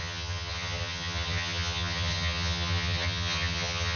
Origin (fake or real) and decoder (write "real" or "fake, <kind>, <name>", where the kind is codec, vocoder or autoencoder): fake, vocoder, HiFi-GAN